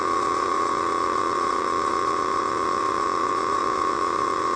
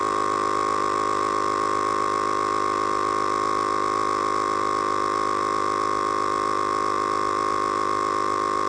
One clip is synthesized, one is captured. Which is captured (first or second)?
second